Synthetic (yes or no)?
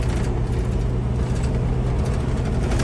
no